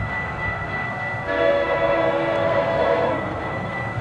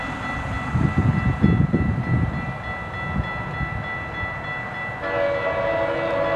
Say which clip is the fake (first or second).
first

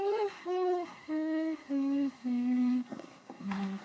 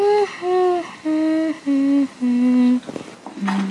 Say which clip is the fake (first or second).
first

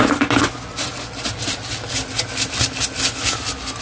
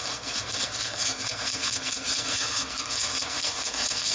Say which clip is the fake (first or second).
second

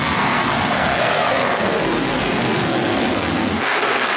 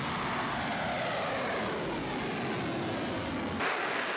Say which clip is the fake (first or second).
first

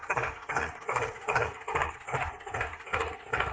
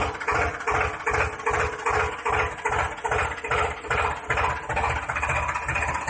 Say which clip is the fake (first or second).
first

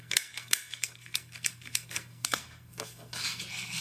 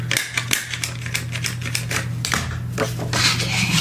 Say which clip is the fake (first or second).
first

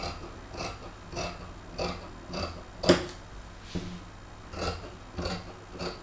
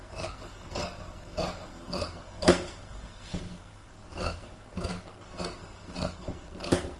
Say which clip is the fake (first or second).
second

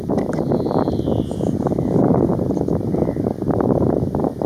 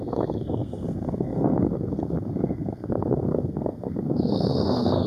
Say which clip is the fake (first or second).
second